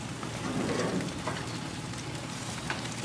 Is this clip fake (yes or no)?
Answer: yes